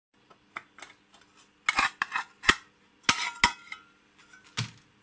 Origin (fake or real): real